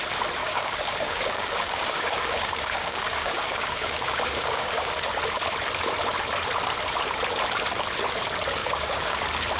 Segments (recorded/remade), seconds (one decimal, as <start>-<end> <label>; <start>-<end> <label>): 0.0-0.4 recorded; 0.4-4.9 remade; 4.9-8.6 recorded; 8.6-9.2 remade; 9.2-9.6 recorded